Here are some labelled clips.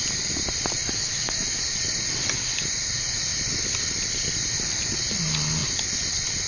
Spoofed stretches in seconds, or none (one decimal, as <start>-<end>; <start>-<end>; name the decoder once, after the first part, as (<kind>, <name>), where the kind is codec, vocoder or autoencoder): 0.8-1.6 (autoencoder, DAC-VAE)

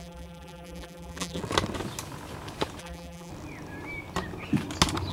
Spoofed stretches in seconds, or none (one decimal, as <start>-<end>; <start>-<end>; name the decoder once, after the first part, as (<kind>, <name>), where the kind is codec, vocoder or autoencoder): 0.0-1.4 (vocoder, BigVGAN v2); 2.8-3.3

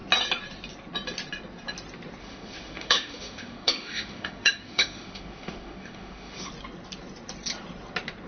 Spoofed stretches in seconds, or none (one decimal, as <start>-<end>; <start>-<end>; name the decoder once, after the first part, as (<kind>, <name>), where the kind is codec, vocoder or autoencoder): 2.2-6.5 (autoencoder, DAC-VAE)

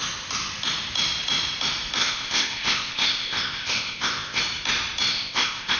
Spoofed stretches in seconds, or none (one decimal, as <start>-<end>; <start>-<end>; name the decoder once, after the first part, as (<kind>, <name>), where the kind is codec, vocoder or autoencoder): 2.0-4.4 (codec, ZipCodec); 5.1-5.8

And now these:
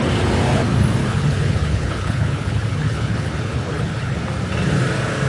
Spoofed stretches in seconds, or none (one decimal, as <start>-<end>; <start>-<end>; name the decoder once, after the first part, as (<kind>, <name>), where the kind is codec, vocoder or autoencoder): 1.0-4.2 (codec, HILCodec)